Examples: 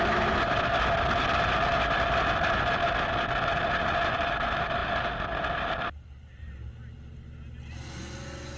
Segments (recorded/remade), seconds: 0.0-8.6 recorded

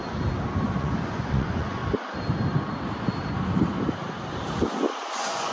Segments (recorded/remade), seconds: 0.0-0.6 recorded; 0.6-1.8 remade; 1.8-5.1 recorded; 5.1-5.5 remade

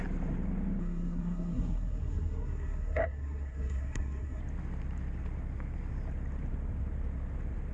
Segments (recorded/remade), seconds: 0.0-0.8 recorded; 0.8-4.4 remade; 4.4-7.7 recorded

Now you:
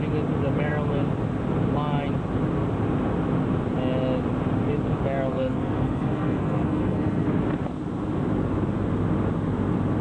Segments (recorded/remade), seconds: 0.0-5.3 recorded; 5.3-7.4 remade; 7.4-10.0 recorded

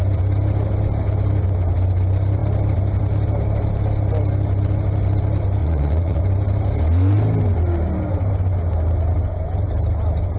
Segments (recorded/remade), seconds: 0.0-5.6 recorded; 5.6-6.2 remade; 6.2-10.4 recorded

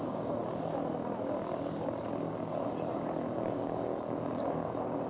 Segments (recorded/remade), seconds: 0.0-0.4 remade; 0.4-3.5 recorded; 3.5-3.9 remade; 3.9-4.5 recorded; 4.5-5.1 remade

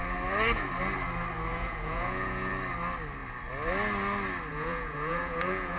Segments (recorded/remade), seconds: 0.0-1.5 recorded; 1.5-2.5 remade; 2.5-4.5 recorded; 4.5-5.8 remade

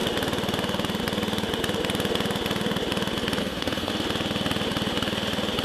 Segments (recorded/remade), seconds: 0.0-3.4 recorded; 3.4-3.9 remade; 3.9-5.6 recorded